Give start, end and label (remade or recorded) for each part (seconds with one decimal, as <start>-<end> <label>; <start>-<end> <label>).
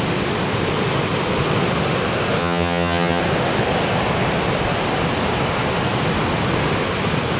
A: 0.0-2.4 recorded; 2.4-3.2 remade; 3.2-7.4 recorded